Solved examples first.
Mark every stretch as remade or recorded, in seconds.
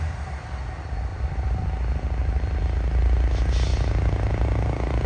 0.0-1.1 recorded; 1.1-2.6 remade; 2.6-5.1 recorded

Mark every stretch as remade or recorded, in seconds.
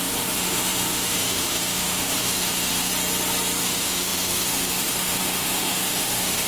0.0-2.9 remade; 2.9-3.6 recorded; 3.6-6.5 remade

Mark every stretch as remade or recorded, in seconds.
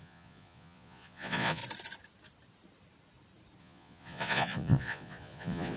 0.0-1.6 remade; 1.6-3.6 recorded; 3.6-5.8 remade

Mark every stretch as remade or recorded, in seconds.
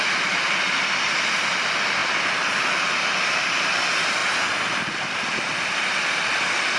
0.0-6.8 recorded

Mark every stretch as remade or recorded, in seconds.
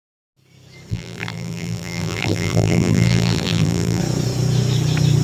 0.0-0.9 recorded; 0.9-4.0 remade; 4.0-5.2 recorded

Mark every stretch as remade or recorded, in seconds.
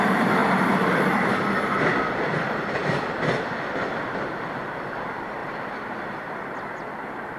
0.0-2.8 remade; 2.8-3.7 recorded; 3.7-5.4 remade; 5.4-7.4 recorded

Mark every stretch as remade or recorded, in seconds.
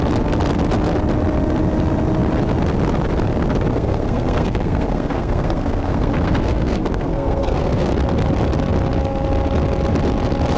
0.0-3.7 recorded; 3.7-7.9 remade; 7.9-10.6 recorded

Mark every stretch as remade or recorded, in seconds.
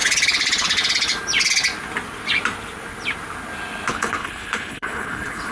0.0-3.9 recorded; 3.9-5.5 remade